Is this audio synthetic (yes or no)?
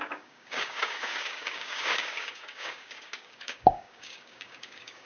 yes